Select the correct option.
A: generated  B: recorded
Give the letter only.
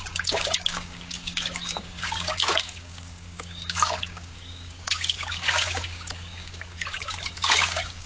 A